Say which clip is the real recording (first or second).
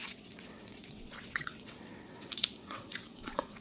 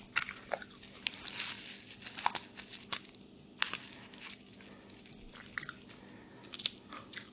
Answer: second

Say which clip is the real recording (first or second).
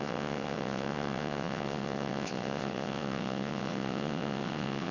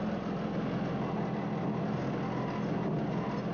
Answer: second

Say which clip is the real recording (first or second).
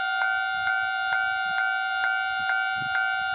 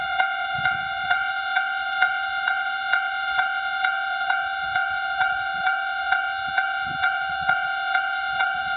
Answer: first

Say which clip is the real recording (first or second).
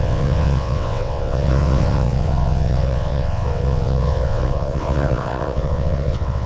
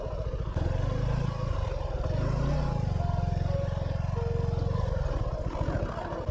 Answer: second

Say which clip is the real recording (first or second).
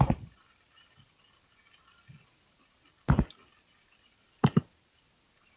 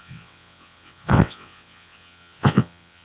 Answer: first